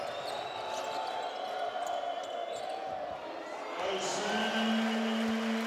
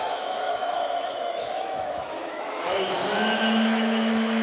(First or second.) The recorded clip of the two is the first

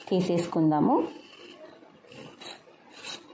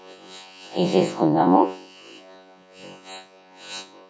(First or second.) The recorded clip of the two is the first